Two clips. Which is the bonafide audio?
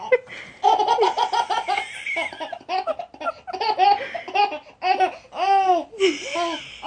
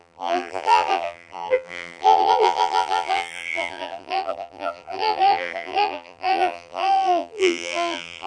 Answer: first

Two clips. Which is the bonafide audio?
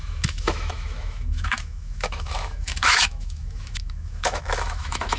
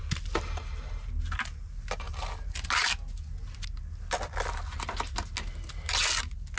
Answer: second